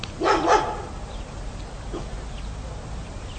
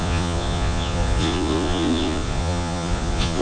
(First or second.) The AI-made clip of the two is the second